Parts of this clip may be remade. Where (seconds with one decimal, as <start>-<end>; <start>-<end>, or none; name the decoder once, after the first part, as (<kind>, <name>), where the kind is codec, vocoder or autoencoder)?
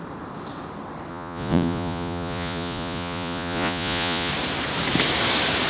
1.1-4.3 (vocoder, Vocos)